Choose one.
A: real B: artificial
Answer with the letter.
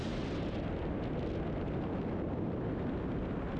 A